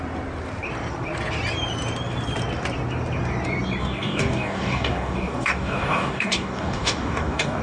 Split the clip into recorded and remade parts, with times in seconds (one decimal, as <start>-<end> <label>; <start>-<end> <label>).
0.0-3.8 recorded; 3.8-7.6 remade